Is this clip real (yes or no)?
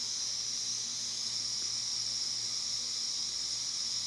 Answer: yes